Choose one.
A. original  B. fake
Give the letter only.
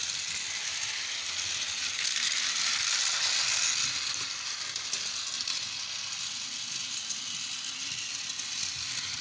A